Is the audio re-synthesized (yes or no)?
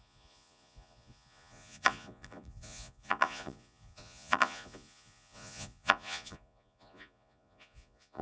yes